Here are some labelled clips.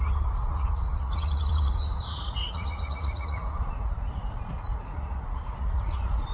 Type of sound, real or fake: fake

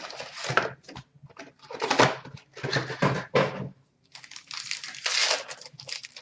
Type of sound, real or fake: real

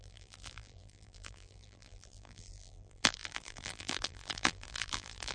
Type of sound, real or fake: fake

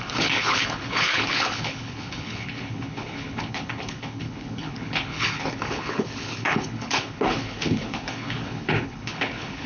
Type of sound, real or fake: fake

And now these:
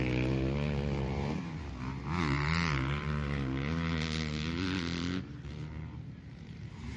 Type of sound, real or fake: fake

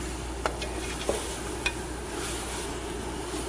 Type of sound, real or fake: real